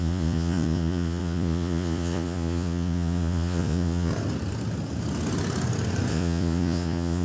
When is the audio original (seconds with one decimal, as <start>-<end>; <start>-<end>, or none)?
4.1-6.1